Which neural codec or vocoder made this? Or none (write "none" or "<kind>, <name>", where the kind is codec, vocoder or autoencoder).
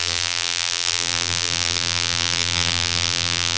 vocoder, BigVGAN v2